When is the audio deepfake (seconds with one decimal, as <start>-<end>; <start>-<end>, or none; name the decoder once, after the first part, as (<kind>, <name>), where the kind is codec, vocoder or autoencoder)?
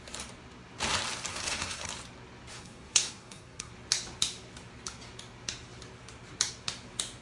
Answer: 1.3-1.9 (codec, SNAC); 2.5-3.7